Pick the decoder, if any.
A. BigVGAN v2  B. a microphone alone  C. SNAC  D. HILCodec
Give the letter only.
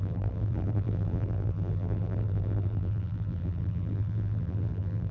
A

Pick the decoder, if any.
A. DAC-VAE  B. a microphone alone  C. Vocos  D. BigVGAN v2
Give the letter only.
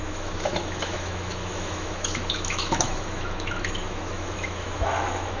A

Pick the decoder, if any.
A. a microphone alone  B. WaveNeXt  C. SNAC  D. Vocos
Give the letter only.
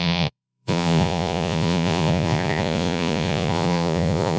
D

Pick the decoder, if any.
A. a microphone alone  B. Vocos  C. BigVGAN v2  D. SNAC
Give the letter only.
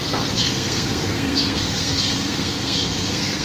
D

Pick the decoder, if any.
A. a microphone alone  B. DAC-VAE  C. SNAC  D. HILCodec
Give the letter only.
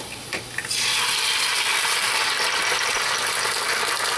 A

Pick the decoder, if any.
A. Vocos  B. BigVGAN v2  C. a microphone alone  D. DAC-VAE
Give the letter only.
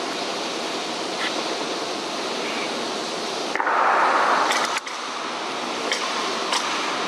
C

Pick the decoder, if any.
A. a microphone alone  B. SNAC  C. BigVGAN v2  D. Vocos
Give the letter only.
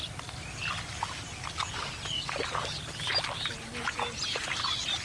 A